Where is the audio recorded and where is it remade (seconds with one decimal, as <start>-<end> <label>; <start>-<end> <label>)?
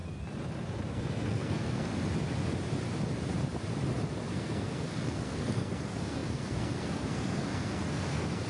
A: 0.0-0.9 recorded; 0.9-1.9 remade; 1.9-4.3 recorded; 4.3-8.5 remade